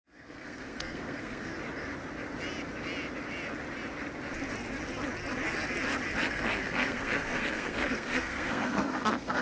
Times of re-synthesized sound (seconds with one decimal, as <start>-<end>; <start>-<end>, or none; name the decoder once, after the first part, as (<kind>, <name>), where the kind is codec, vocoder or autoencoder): 0.0-1.5 (codec, SNAC); 6.3-9.4